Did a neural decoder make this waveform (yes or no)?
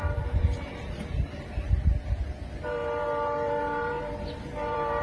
yes